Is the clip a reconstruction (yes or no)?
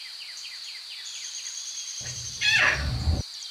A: yes